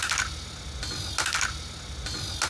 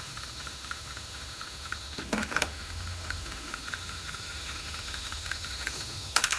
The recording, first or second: first